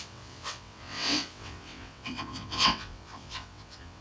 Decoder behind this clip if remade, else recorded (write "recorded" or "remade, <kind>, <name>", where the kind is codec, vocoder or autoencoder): remade, vocoder, WaveNeXt